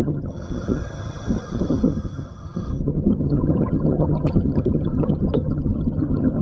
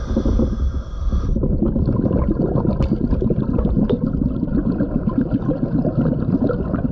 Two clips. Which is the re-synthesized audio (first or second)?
first